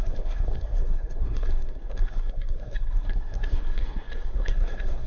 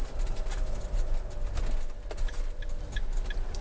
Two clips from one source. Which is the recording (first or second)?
second